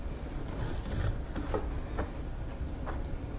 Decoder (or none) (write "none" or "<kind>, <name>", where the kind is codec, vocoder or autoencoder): none